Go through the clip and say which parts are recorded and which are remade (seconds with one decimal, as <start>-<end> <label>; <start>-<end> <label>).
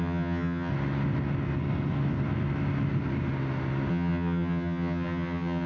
0.0-0.7 remade; 0.7-3.9 recorded; 3.9-5.7 remade